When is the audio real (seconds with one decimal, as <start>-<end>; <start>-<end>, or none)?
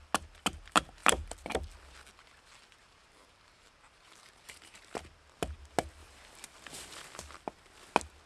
0.0-2.8; 5.0-8.3